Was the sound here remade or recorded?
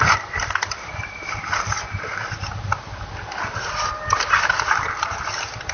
remade